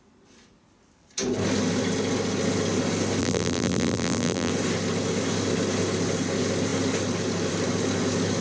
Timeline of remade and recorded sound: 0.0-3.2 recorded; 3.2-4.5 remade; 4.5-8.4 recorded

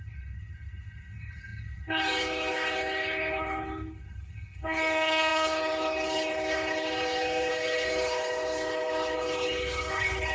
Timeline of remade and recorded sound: 0.0-10.3 remade

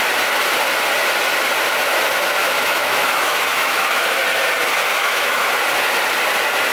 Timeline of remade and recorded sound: 0.0-2.4 recorded; 2.4-4.2 remade; 4.2-4.9 recorded; 4.9-5.5 remade; 5.5-6.7 recorded

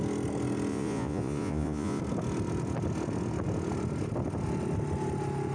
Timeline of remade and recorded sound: 0.0-0.7 recorded; 0.7-2.0 remade; 2.0-5.5 recorded

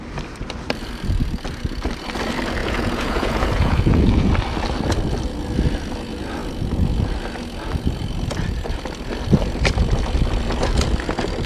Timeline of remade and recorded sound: 0.0-2.6 recorded; 2.6-4.3 remade; 4.3-11.5 recorded

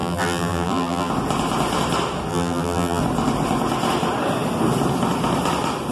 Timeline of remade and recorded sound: 0.0-1.1 remade; 1.1-2.3 recorded; 2.3-3.0 remade; 3.0-5.9 recorded

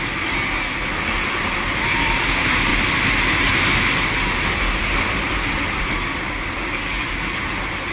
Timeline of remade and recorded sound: 0.0-7.9 recorded

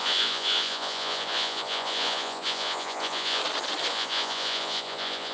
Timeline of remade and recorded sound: 0.0-3.4 remade; 3.4-3.9 recorded; 3.9-5.3 remade